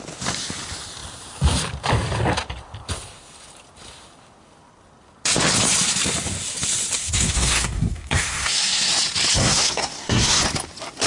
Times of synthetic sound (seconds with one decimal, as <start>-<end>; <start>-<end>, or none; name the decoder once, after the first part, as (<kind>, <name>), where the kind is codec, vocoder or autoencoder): 7.0-8.9 (codec, SNAC); 9.4-10.4